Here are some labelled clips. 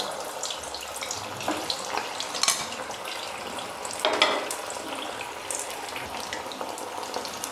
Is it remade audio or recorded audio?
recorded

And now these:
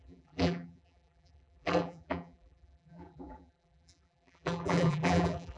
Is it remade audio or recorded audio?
remade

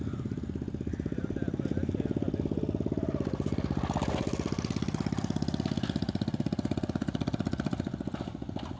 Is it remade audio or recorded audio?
recorded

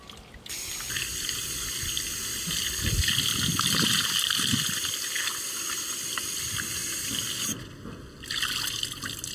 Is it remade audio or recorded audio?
recorded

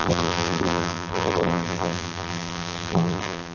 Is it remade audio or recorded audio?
remade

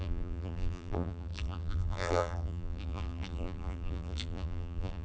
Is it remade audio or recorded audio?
remade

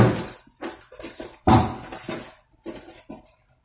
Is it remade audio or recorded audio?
remade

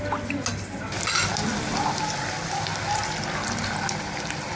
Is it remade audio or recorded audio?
recorded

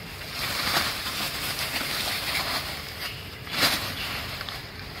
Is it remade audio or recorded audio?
remade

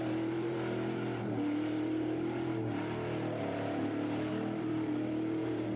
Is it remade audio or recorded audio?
remade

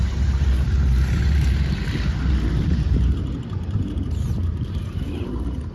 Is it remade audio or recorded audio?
remade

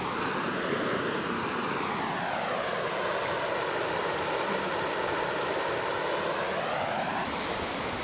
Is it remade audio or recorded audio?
recorded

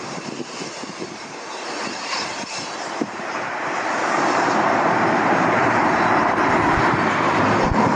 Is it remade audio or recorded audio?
remade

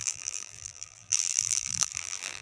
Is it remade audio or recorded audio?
remade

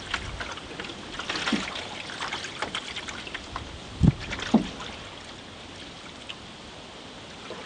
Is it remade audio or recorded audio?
recorded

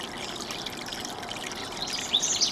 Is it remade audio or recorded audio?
recorded